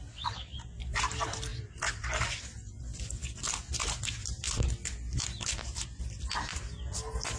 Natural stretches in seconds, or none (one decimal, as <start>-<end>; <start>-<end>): 0.0-7.4